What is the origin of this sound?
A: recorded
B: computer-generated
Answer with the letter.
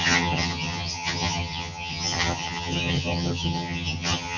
B